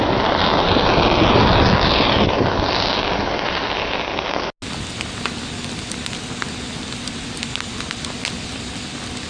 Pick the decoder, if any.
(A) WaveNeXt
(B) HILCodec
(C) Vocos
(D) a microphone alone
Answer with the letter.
D